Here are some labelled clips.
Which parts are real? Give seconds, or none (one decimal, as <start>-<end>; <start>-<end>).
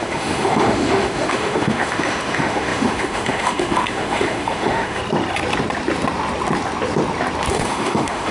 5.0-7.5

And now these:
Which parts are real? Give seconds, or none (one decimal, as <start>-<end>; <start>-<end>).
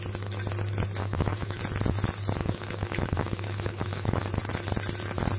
0.0-1.0; 1.6-2.4; 4.3-5.4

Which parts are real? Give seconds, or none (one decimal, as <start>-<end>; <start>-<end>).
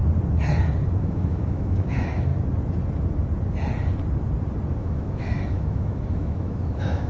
0.0-1.0; 2.3-4.8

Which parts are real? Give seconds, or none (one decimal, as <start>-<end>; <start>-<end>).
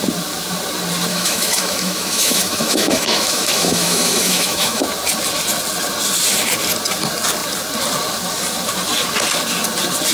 0.0-1.1; 4.8-10.1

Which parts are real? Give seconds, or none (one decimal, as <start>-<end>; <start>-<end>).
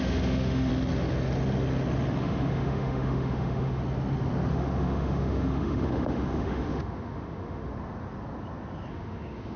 0.7-2.2; 3.8-4.5; 7.7-8.9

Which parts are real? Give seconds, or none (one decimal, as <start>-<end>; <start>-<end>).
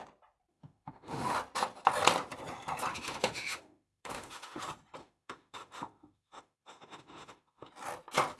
0.0-0.5; 1.4-2.9; 4.6-5.0; 7.7-8.4